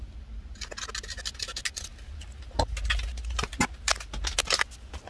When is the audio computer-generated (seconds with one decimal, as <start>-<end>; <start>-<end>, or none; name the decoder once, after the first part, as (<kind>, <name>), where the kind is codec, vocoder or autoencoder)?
none